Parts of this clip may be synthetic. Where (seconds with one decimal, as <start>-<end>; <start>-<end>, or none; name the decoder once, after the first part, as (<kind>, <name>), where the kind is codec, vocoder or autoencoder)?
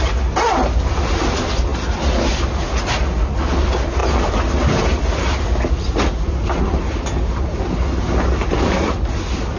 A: none